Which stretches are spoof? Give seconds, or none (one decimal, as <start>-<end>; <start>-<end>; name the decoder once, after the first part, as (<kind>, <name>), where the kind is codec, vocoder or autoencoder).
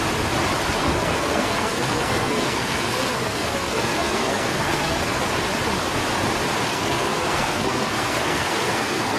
0.8-5.2 (codec, SNAC); 6.7-9.2